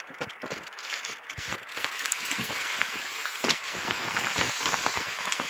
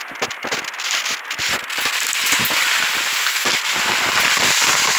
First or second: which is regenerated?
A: first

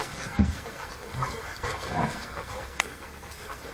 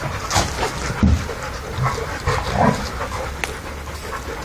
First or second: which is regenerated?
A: first